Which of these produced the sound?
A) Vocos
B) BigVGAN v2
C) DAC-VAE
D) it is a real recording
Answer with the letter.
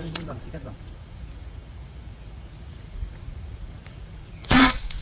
A